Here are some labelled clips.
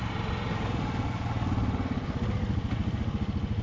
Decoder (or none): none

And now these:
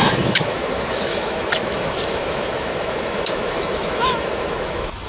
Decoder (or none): autoencoder, DAC-VAE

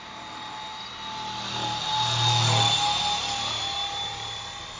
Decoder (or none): none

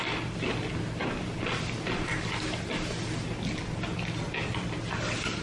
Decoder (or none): none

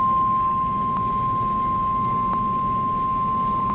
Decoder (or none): none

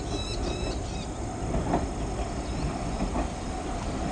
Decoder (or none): none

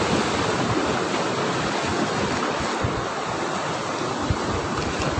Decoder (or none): none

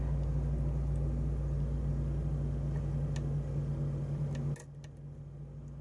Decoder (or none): none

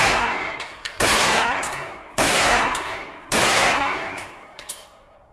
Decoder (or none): codec, SNAC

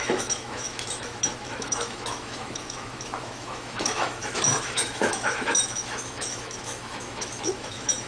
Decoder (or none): autoencoder, DAC-VAE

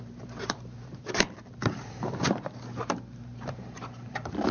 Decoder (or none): vocoder, BigVGAN v2